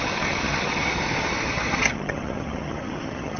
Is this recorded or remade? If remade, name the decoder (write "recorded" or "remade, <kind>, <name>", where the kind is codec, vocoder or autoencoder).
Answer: remade, vocoder, HiFi-GAN